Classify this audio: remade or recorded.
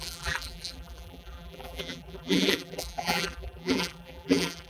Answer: remade